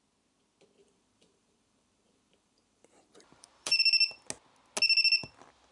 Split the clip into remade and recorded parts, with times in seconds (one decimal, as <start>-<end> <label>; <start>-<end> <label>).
0.0-0.8 recorded; 0.8-3.8 remade; 3.8-5.7 recorded